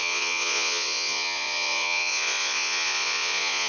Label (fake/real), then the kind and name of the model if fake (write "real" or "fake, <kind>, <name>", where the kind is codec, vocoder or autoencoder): fake, vocoder, Vocos